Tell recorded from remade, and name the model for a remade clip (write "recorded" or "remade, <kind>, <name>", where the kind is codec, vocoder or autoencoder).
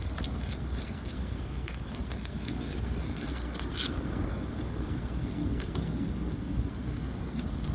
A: remade, codec, SNAC